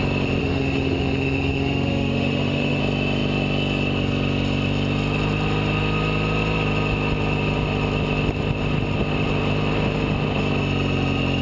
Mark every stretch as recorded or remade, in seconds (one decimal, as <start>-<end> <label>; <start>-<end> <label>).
0.0-0.4 recorded; 0.4-2.8 remade; 2.8-11.4 recorded